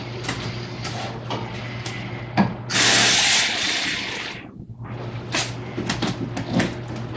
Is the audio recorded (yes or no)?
yes